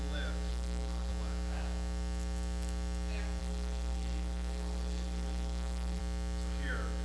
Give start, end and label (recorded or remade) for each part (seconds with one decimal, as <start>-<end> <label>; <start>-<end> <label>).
0.0-0.5 recorded; 0.5-1.1 remade; 1.1-3.4 recorded; 3.4-6.0 remade; 6.0-7.0 recorded